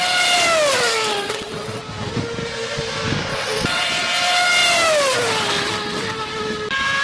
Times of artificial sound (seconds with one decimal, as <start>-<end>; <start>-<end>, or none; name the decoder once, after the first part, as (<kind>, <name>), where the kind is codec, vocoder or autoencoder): 1.1-1.8 (vocoder, WaveNeXt); 3.3-3.9